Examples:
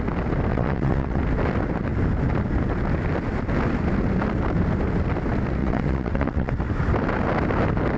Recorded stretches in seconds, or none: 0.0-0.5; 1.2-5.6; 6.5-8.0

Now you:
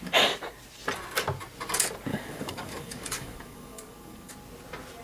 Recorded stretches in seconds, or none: 0.0-2.1; 4.3-5.0

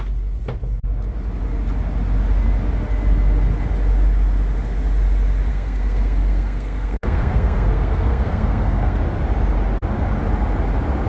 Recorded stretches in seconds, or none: 0.0-5.5; 9.0-11.1

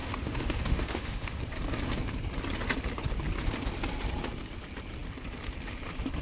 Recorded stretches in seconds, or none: 1.4-6.2

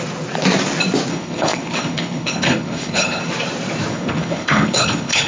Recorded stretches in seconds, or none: 0.0-1.1; 3.2-3.9

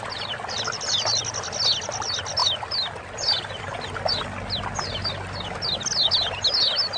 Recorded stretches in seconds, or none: 0.0-7.0

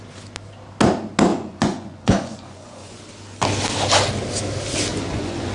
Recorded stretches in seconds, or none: 0.0-1.3; 3.0-4.9

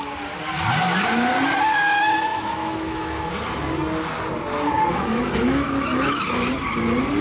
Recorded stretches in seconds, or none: 0.0-2.3; 3.3-4.9; 6.3-7.2